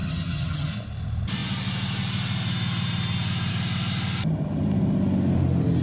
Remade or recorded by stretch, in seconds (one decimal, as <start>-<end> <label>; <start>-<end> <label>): 0.0-0.7 remade; 0.7-5.8 recorded